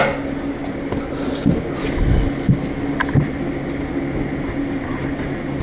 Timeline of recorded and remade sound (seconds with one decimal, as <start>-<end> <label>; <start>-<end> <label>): 0.0-5.6 recorded